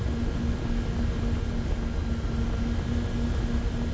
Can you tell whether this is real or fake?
real